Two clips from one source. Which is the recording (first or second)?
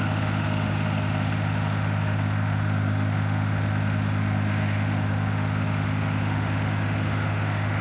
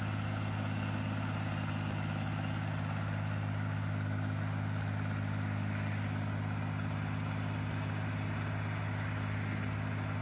second